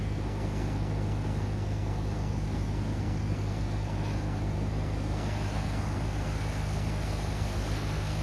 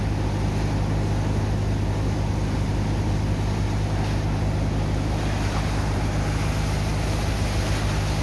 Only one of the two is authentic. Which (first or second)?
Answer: second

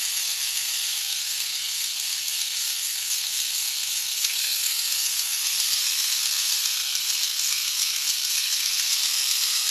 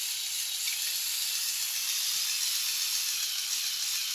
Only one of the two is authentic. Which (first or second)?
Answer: second